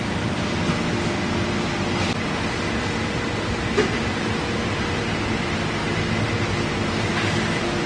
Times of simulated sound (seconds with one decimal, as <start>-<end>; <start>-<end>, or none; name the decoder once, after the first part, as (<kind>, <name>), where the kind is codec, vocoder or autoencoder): none